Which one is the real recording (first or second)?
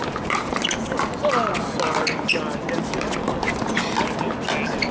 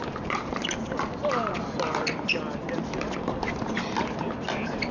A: first